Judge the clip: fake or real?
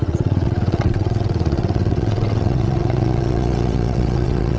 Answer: fake